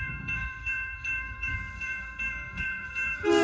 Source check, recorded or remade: remade